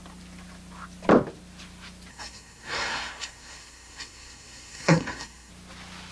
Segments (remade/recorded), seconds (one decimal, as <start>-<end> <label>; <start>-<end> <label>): 0.0-2.1 recorded; 2.1-5.5 remade; 5.5-6.1 recorded